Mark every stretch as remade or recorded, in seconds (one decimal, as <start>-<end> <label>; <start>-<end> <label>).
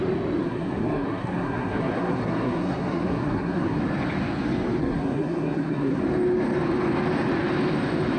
0.0-0.4 recorded; 0.4-3.8 remade; 3.8-4.8 recorded; 4.8-6.0 remade; 6.0-8.2 recorded